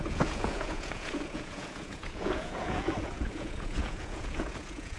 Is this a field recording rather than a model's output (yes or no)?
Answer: no